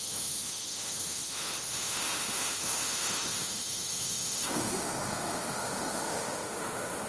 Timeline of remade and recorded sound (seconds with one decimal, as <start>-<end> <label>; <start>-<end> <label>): 0.0-7.1 remade